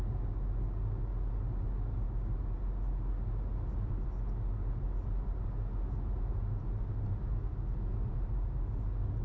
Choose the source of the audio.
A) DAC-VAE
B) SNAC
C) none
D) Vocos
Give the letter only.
C